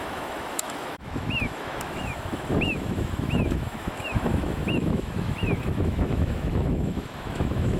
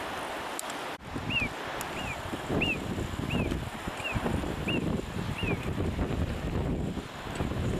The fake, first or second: first